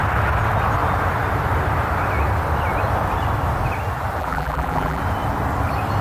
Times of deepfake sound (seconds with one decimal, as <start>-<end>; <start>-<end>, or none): 4.2-5.0